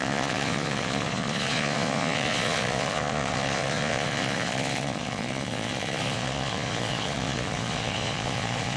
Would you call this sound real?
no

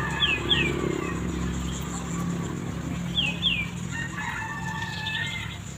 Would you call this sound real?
yes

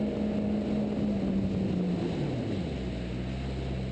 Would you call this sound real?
yes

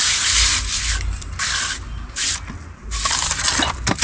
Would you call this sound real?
yes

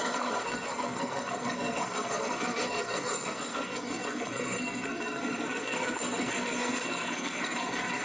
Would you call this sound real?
no